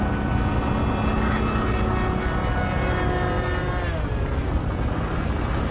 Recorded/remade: recorded